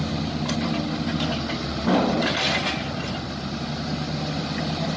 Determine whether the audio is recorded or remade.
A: recorded